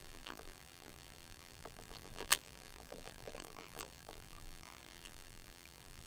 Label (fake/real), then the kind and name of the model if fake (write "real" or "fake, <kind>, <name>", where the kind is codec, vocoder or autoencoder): fake, vocoder, BigVGAN v2